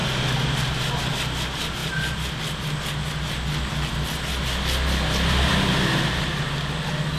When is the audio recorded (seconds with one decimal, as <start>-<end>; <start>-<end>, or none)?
0.0-7.2